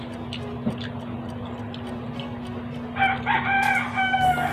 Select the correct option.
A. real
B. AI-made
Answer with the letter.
A